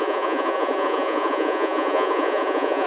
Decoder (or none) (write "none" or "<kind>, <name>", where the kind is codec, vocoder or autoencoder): vocoder, Vocos